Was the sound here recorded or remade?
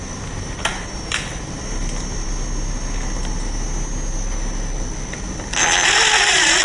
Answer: recorded